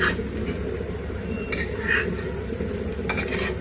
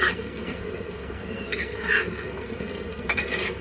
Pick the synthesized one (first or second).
second